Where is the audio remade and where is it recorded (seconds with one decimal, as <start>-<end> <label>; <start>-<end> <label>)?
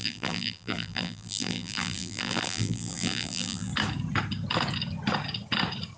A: 0.0-3.7 remade; 3.7-6.0 recorded